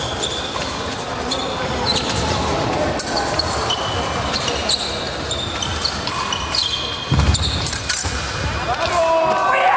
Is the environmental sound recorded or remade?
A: recorded